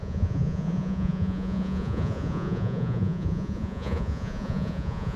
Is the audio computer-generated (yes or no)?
yes